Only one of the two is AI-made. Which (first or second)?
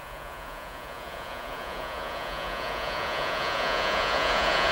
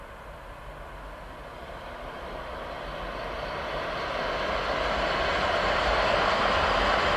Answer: first